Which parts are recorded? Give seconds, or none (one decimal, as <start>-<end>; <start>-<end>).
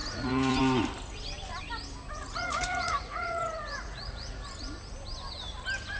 0.6-2.2; 4.5-6.0